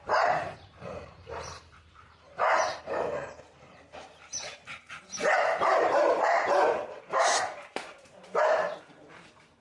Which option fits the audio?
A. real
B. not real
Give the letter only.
B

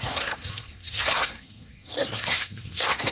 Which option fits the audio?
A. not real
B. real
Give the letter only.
A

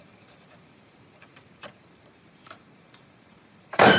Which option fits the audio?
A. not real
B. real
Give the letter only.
A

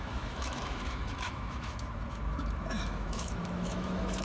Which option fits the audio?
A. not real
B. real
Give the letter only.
A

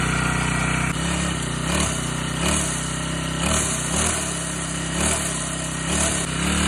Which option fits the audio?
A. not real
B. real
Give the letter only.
B